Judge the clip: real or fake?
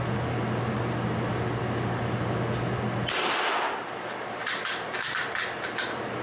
real